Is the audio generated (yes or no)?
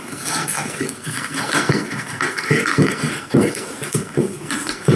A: yes